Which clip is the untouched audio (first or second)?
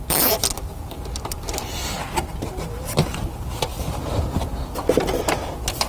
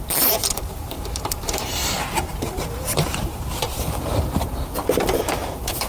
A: first